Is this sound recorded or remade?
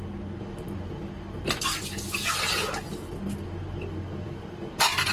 recorded